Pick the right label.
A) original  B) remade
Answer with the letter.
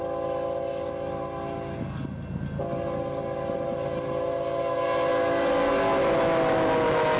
A